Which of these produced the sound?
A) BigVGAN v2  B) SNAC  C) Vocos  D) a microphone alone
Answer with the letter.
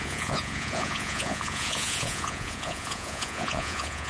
C